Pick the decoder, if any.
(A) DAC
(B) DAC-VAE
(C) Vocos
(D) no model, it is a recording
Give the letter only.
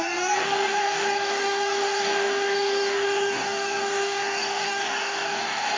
A